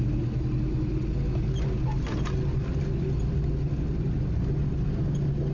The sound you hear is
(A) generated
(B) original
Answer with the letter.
B